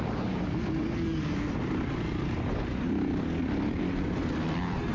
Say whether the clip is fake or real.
real